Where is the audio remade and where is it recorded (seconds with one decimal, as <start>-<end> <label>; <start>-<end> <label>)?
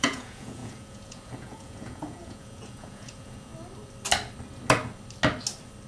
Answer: 0.0-3.5 remade; 3.5-5.9 recorded